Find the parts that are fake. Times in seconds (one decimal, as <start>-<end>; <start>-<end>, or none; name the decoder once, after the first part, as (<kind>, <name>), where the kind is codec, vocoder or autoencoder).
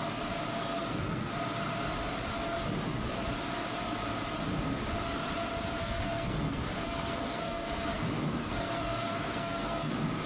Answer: 0.6-1.3 (codec, SNAC); 5.8-8.0; 8.4-9.9